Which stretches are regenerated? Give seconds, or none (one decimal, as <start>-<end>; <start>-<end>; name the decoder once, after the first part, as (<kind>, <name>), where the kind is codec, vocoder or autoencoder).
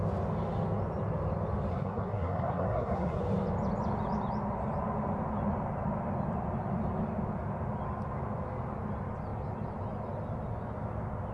1.7-3.2 (codec, SNAC)